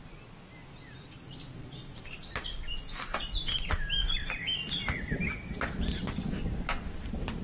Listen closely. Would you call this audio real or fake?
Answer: real